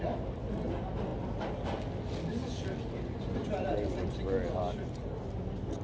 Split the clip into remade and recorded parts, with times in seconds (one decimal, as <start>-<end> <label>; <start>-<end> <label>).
0.0-5.8 recorded